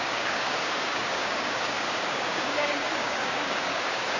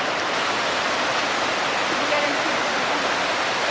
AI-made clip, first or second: first